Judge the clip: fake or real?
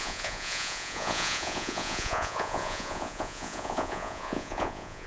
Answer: fake